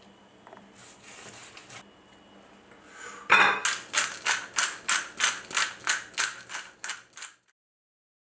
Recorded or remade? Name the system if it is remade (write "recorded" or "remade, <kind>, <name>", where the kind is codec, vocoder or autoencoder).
recorded